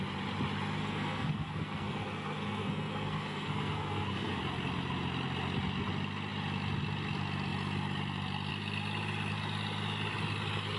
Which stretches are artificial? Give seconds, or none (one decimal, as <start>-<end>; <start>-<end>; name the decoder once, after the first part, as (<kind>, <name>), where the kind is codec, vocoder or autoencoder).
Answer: 0.8-4.4 (codec, SNAC)